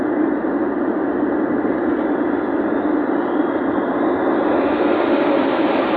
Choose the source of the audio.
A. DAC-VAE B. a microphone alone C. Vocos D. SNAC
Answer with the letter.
B